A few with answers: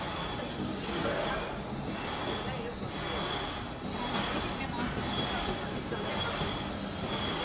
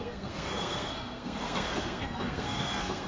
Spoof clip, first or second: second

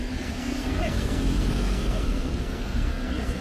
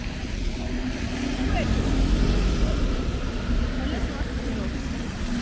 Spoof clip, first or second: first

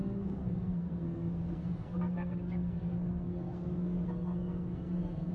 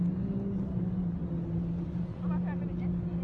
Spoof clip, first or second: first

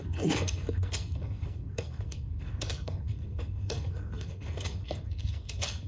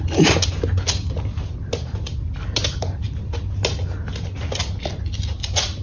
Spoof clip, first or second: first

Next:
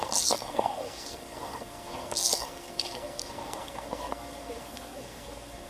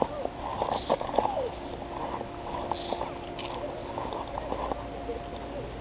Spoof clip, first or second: first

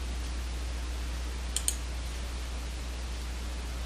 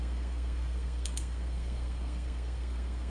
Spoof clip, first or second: second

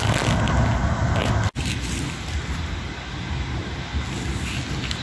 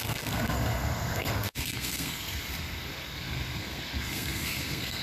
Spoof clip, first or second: second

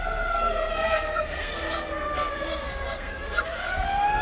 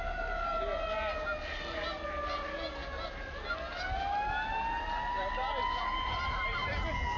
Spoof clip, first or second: first